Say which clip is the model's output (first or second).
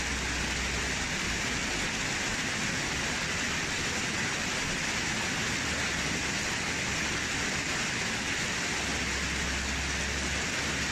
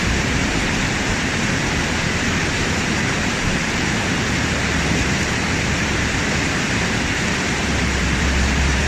second